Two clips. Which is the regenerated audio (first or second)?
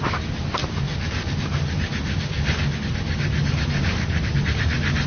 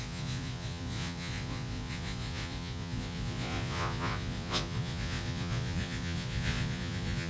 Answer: second